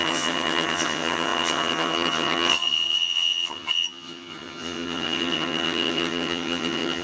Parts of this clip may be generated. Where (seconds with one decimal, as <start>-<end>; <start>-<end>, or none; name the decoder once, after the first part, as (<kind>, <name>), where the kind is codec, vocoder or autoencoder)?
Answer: 0.0-7.0 (vocoder, HiFi-GAN)